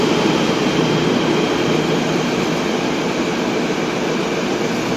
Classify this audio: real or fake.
real